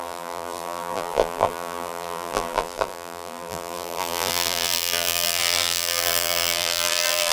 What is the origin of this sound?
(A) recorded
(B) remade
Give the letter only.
B